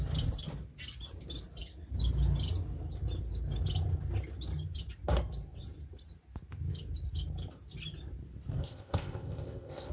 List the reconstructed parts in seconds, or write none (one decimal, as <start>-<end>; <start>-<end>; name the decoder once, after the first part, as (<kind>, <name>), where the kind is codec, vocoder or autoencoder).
8.6-9.9 (codec, ZipCodec)